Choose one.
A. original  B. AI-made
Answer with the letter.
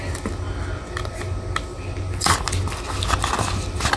A